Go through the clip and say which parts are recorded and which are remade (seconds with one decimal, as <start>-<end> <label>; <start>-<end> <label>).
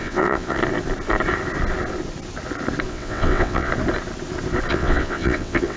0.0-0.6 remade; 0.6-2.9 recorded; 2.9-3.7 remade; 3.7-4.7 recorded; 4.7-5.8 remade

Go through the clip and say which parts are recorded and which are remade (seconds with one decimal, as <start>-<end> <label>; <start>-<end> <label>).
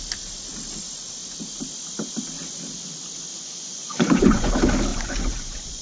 0.0-3.3 recorded; 3.3-4.5 remade; 4.5-4.9 recorded; 4.9-5.8 remade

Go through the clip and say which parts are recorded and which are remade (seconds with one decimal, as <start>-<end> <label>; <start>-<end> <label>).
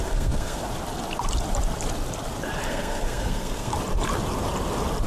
0.0-0.6 remade; 0.6-2.7 recorded; 2.7-3.7 remade; 3.7-5.1 recorded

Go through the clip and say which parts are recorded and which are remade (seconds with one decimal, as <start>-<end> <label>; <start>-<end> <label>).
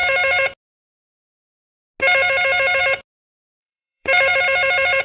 0.0-3.6 recorded; 3.6-4.4 remade; 4.4-5.0 recorded